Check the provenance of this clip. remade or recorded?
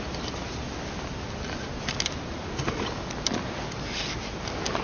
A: recorded